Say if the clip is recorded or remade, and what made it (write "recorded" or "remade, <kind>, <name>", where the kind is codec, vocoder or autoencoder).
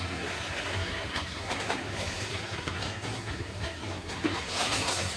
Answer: remade, codec, SNAC